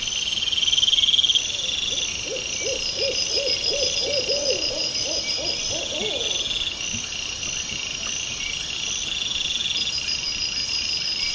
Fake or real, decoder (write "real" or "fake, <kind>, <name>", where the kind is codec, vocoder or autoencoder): real